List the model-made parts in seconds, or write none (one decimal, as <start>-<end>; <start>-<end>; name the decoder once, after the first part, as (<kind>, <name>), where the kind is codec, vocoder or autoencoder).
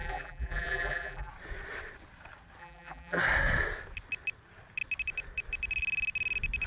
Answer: 0.0-1.3 (vocoder, BigVGAN v2); 2.6-3.2